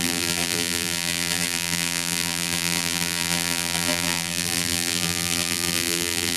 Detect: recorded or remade remade